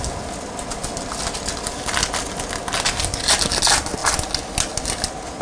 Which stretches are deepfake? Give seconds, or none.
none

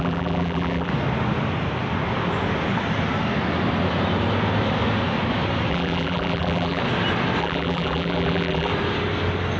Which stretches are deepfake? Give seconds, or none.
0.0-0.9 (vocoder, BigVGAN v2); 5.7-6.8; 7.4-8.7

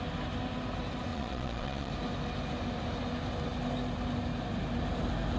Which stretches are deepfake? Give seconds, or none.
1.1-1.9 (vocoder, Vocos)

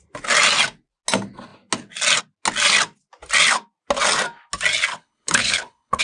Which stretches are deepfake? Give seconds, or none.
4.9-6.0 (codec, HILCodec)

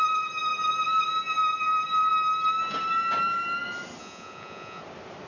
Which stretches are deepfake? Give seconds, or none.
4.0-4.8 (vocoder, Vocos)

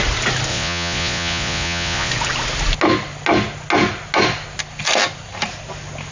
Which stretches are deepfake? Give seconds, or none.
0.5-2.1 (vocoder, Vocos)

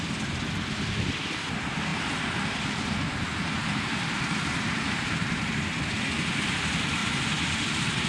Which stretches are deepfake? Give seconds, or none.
1.9-5.9 (vocoder, BigVGAN v2); 7.0-8.1